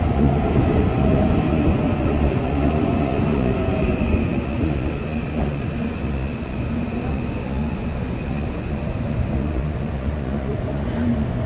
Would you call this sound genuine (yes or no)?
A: no